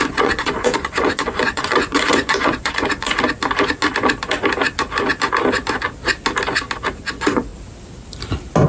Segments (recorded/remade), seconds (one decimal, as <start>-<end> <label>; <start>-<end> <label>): 0.0-3.1 remade; 3.1-7.0 recorded; 7.0-7.5 remade; 7.5-8.7 recorded